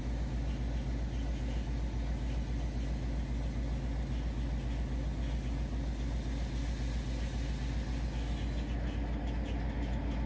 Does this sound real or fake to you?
real